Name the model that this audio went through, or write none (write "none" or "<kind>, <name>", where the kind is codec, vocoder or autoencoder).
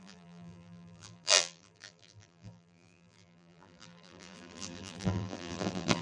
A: vocoder, BigVGAN v2